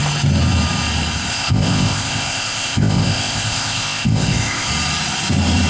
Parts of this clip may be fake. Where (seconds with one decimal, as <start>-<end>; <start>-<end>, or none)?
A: 1.3-4.7